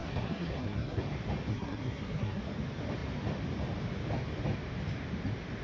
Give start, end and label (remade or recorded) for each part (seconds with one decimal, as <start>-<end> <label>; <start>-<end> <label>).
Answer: 0.0-1.0 remade; 1.0-1.5 recorded; 1.5-2.4 remade; 2.4-5.6 recorded